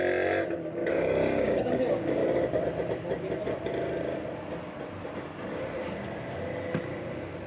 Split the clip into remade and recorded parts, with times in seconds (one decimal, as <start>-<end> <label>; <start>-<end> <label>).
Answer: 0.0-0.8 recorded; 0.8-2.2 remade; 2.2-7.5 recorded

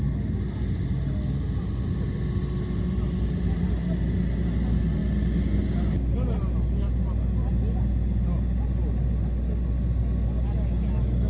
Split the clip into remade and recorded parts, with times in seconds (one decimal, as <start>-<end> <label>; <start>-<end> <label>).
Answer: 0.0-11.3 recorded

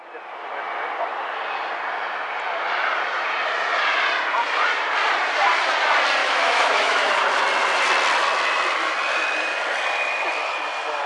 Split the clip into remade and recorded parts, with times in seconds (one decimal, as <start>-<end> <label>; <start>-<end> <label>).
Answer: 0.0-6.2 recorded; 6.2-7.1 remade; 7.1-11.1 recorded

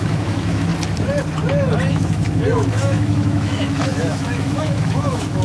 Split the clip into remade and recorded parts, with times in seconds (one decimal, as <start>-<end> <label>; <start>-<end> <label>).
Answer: 0.0-0.7 remade; 0.7-1.9 recorded; 1.9-5.4 remade

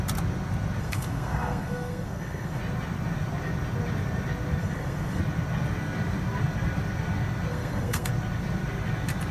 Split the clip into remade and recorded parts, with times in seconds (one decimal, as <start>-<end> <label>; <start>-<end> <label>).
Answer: 0.0-0.8 recorded; 0.8-2.6 remade; 2.6-4.6 recorded; 4.6-5.2 remade; 5.2-7.5 recorded; 7.5-8.1 remade; 8.1-9.3 recorded

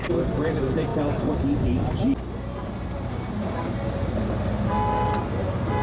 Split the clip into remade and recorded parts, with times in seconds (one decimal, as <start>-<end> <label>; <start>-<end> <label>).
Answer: 0.0-5.8 recorded

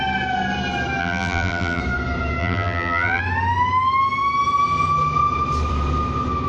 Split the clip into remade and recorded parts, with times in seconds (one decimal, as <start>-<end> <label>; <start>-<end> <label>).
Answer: 0.0-1.0 recorded; 1.0-1.8 remade; 1.8-2.4 recorded; 2.4-3.2 remade; 3.2-6.5 recorded

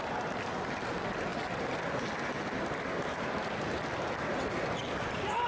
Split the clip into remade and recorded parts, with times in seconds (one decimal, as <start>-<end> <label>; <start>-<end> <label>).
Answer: 0.0-5.5 recorded